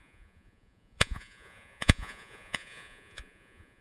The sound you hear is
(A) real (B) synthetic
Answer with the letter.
B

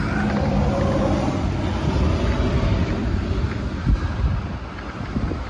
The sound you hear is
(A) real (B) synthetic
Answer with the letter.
A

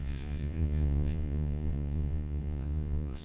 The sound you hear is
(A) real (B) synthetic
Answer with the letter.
B